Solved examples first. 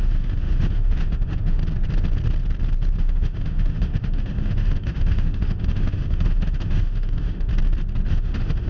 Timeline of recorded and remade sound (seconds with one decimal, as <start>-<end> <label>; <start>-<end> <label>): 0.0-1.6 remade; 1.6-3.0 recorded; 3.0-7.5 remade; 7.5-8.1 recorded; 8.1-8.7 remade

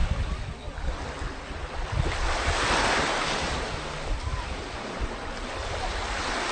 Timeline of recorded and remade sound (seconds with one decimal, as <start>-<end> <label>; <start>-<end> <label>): 0.0-6.5 recorded

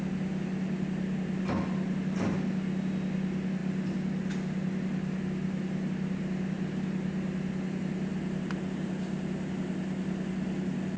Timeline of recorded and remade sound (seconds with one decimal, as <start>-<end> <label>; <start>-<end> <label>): 0.0-11.0 recorded